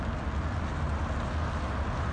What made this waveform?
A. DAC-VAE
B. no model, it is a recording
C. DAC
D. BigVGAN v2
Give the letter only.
B